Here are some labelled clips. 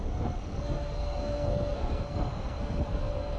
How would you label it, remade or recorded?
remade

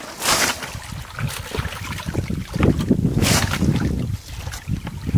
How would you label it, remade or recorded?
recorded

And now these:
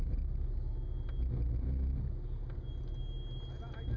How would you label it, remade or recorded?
recorded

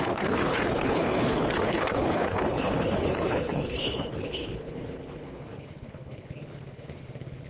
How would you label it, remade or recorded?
remade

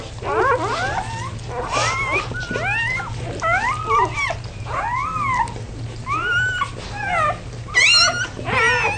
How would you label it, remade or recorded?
recorded